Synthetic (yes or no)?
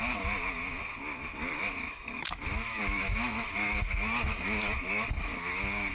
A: yes